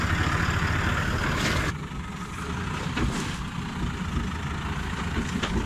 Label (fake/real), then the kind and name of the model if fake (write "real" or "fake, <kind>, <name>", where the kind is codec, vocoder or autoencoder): real